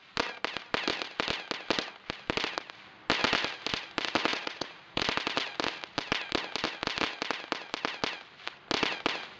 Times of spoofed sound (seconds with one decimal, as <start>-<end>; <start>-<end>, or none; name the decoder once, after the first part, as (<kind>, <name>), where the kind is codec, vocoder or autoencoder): 4.3-5.0 (vocoder, Vocos)